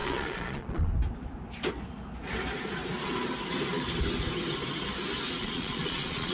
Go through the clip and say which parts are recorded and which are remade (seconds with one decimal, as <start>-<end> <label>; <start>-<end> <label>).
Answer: 0.0-0.9 remade; 0.9-5.4 recorded; 5.4-6.3 remade

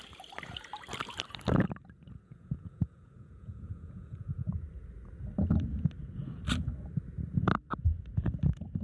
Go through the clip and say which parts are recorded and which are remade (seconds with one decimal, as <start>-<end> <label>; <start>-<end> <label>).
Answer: 0.0-2.0 recorded; 2.0-4.5 remade; 4.5-8.8 recorded

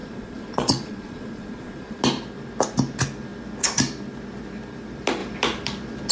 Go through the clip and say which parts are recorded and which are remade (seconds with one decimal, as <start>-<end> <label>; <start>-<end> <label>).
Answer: 0.0-2.0 remade; 2.0-6.1 recorded

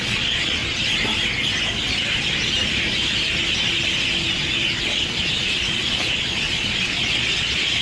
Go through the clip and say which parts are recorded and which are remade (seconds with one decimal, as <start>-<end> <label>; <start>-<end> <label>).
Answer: 0.0-0.6 remade; 0.6-4.8 recorded; 4.8-7.8 remade

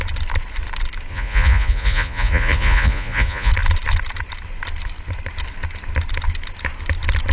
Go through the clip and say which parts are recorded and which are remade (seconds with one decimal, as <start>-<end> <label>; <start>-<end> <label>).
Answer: 0.0-1.1 recorded; 1.1-3.5 remade; 3.5-7.3 recorded

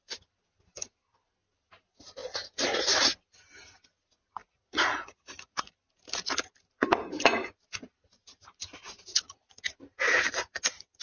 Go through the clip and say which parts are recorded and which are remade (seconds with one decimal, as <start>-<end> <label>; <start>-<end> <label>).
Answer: 0.0-4.4 recorded; 4.4-5.7 remade; 5.7-9.1 recorded; 9.1-9.6 remade; 9.6-11.0 recorded

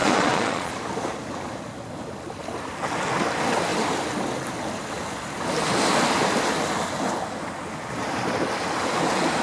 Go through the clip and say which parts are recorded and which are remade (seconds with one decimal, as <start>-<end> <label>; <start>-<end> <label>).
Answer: 0.0-0.7 remade; 0.7-9.4 recorded